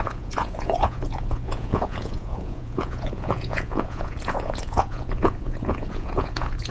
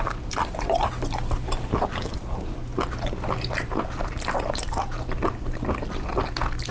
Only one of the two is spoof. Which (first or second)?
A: first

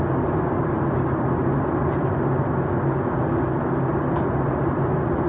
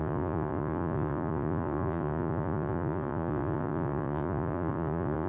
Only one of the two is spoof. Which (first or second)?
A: second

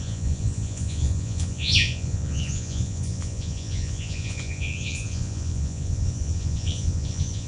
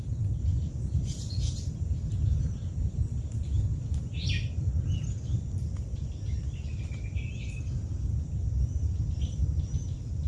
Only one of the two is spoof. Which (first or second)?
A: first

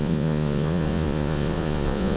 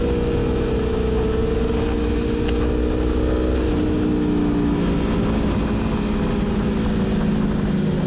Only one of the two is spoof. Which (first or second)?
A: first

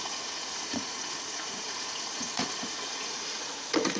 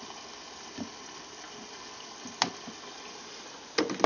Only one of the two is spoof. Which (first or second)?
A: first